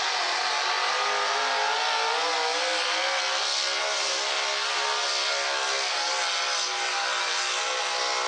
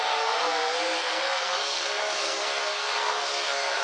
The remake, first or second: second